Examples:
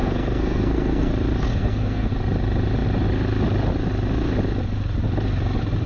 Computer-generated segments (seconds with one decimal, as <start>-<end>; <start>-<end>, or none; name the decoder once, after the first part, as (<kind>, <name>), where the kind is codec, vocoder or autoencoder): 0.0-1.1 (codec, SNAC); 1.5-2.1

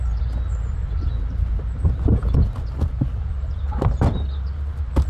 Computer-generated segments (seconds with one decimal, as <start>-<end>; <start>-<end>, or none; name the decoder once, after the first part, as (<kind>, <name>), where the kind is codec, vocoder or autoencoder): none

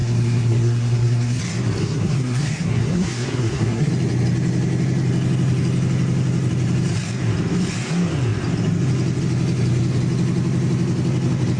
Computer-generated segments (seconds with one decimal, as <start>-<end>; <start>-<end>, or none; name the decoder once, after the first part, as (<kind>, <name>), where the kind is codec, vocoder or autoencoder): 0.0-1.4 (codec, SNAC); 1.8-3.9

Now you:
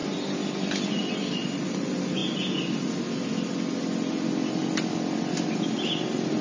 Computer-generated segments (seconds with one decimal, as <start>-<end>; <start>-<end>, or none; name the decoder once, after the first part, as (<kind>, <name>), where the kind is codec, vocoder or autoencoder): none

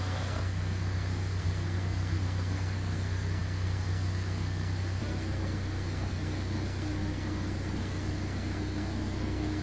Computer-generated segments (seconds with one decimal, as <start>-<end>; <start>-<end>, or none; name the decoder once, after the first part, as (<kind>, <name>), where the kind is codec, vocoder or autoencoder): 0.0-9.6 (codec, SNAC)

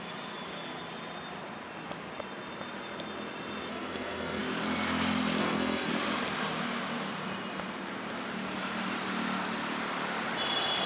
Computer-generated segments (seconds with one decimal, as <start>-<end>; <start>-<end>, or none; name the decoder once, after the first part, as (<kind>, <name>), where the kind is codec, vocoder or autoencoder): 3.7-4.4 (codec, SNAC); 5.4-5.9